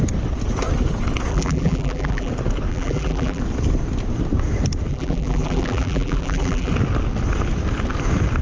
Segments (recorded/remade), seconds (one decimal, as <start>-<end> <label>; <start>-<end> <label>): 0.0-1.3 recorded; 1.3-2.3 remade; 2.3-2.7 recorded; 2.7-3.4 remade; 3.4-4.9 recorded; 4.9-6.7 remade; 6.7-8.4 recorded